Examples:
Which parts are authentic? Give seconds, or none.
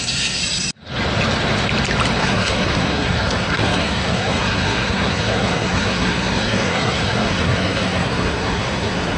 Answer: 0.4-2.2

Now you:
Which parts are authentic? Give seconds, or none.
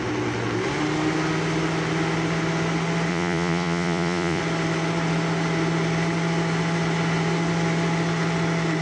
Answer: 0.0-3.1; 4.4-8.8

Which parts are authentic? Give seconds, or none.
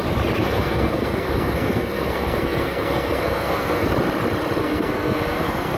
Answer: 0.0-0.4; 3.9-4.6